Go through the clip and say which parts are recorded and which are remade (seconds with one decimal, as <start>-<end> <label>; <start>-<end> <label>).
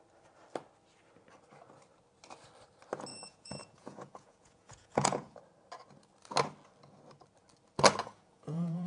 0.0-3.1 recorded; 3.1-5.4 remade; 5.4-8.0 recorded; 8.0-8.9 remade